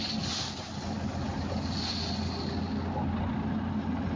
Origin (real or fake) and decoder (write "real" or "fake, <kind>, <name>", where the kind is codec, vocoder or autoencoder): real